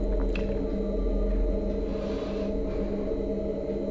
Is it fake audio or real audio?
real